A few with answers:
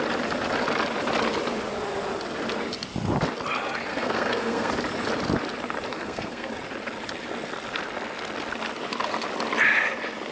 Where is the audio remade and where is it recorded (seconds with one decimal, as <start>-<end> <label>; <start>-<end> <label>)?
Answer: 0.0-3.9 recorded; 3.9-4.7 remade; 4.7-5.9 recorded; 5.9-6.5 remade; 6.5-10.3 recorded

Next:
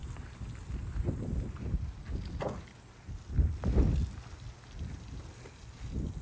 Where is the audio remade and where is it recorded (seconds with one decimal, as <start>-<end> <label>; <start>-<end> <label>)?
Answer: 0.0-6.2 recorded

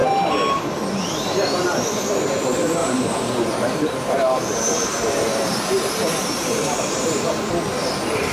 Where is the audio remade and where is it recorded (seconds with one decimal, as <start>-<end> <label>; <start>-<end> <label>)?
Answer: 0.0-2.8 recorded; 2.8-7.5 remade; 7.5-8.3 recorded